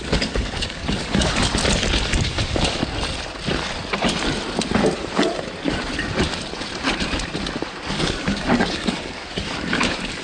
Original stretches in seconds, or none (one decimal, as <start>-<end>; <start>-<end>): 1.5-2.0; 2.8-7.9